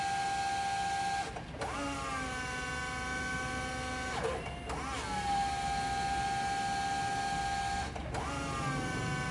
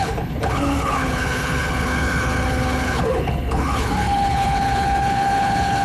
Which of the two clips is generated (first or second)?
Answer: second